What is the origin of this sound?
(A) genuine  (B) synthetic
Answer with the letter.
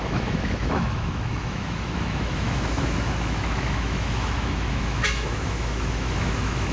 B